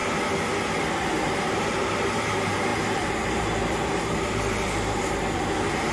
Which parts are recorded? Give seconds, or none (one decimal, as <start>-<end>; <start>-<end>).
0.0-0.9